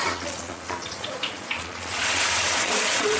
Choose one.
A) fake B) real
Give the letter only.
A